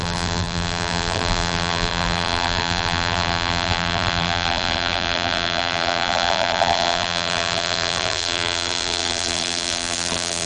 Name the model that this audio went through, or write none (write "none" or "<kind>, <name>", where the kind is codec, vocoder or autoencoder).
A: vocoder, BigVGAN v2